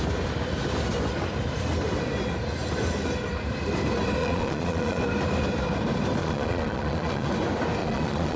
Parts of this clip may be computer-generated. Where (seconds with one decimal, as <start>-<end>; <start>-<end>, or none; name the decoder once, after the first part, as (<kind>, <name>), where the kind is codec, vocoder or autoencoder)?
4.2-5.0 (vocoder, Vocos); 6.2-7.3; 7.8-8.4